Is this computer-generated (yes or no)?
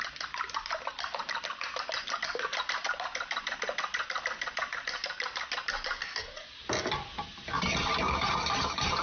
no